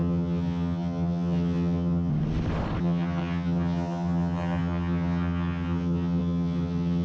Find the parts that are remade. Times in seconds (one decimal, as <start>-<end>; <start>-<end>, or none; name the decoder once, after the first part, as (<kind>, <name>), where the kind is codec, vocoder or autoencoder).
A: 0.0-2.1 (vocoder, HiFi-GAN); 2.8-7.0